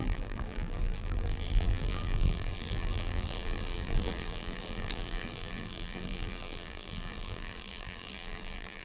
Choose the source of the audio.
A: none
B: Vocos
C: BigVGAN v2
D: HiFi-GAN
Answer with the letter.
C